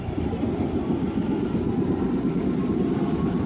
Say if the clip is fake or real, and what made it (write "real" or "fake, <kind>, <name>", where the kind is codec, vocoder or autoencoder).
fake, vocoder, BigVGAN v2